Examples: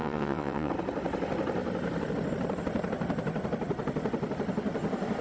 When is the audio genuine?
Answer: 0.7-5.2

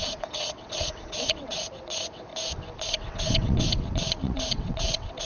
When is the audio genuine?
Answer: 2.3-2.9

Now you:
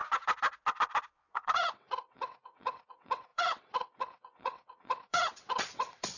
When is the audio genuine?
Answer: 0.0-1.2

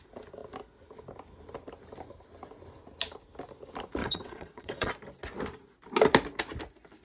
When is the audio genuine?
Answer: 0.0-4.0; 4.9-7.0

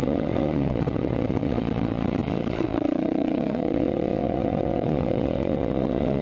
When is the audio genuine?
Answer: none